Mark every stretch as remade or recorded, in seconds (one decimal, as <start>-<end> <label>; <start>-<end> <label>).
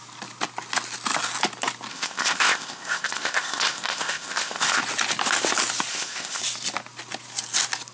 0.0-1.9 recorded; 1.9-4.8 remade; 4.8-5.9 recorded; 5.9-6.4 remade; 6.4-7.9 recorded